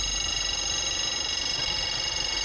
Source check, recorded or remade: recorded